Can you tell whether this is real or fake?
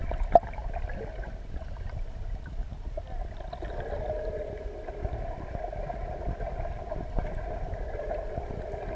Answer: real